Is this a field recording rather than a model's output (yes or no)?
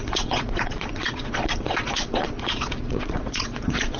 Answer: no